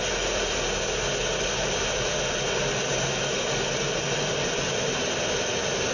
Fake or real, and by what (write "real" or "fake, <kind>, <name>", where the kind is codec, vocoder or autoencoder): real